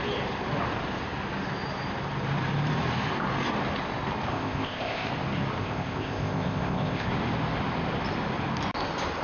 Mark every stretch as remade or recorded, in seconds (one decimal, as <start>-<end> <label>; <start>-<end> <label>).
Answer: 0.0-4.3 recorded; 4.3-5.1 remade; 5.1-5.6 recorded; 5.6-7.1 remade; 7.1-9.2 recorded